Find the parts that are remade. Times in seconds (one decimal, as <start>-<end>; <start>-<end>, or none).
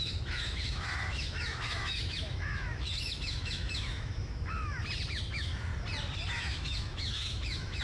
0.0-4.8; 5.3-5.7; 6.3-7.8